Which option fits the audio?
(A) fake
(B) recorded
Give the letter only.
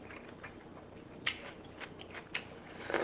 B